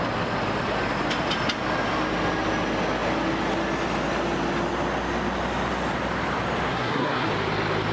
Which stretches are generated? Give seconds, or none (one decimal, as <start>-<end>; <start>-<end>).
6.7-7.3